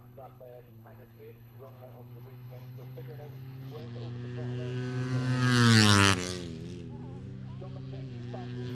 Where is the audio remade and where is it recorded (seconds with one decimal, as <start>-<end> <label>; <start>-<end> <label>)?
0.0-3.8 remade; 3.8-8.7 recorded